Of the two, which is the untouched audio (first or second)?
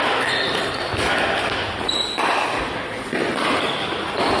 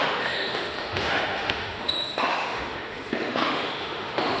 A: first